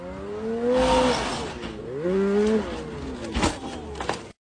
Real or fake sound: real